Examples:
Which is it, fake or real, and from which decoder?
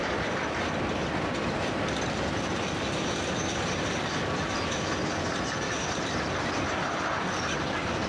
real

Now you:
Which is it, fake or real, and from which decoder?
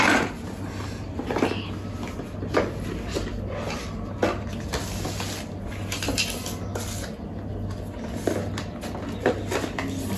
real